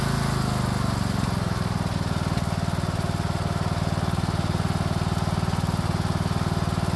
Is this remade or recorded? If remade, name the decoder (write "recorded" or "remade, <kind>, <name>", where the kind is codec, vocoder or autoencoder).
recorded